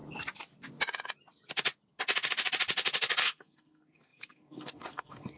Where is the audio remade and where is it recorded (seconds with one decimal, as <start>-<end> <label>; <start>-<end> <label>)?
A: 0.0-3.2 recorded; 3.2-5.4 remade